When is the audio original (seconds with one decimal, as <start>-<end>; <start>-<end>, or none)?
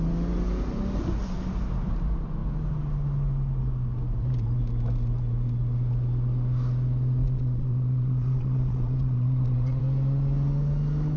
0.0-7.2; 9.8-11.2